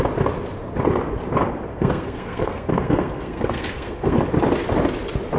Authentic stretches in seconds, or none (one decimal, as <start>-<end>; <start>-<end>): 0.0-1.7; 4.2-5.4

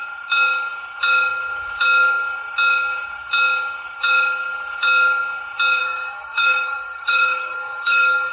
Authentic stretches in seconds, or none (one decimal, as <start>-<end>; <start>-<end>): 0.0-5.8

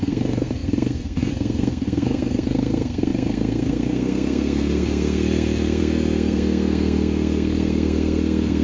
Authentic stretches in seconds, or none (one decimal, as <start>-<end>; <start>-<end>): none

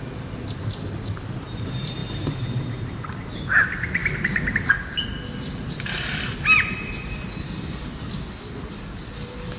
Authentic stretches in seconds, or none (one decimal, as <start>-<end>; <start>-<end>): 0.0-9.6

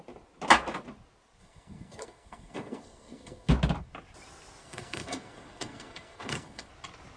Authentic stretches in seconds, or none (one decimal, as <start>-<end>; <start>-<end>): 0.0-1.4; 3.5-4.6; 6.7-7.2

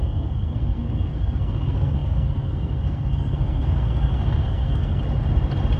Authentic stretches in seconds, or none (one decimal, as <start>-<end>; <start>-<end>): 5.0-5.8

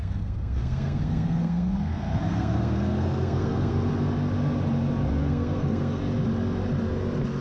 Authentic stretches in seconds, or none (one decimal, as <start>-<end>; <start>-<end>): 3.9-5.2; 6.0-7.4